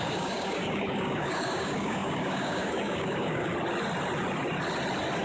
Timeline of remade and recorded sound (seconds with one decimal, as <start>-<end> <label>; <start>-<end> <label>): 0.0-3.5 remade; 3.5-5.2 recorded